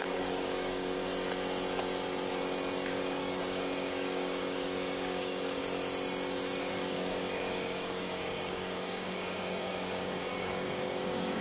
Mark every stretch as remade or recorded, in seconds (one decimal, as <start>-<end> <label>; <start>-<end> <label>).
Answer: 0.0-1.1 remade; 1.1-2.9 recorded; 2.9-5.6 remade; 5.6-6.6 recorded; 6.6-11.4 remade